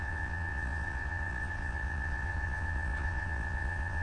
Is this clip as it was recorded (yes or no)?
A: no